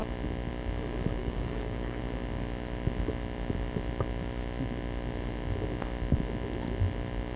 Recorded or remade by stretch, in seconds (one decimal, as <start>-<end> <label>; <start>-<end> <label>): 0.0-1.2 recorded; 1.2-2.0 remade; 2.0-7.4 recorded

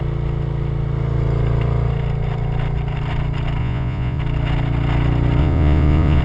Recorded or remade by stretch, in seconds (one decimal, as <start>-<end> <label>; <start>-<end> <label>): 0.0-3.6 recorded; 3.6-4.2 remade; 4.2-5.4 recorded; 5.4-6.2 remade

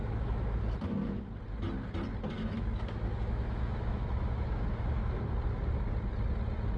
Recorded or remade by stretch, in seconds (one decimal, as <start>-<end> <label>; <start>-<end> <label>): 0.0-0.6 remade; 0.6-2.4 recorded; 2.4-5.3 remade; 5.3-6.8 recorded

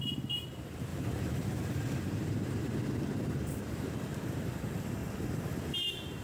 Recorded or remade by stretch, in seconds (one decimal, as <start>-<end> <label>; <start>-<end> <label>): 0.0-6.2 remade

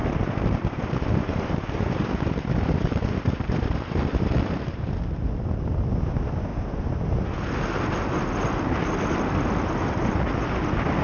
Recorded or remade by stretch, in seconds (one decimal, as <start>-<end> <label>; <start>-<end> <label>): 0.0-5.0 remade; 5.0-6.5 recorded; 6.5-7.0 remade; 7.0-11.0 recorded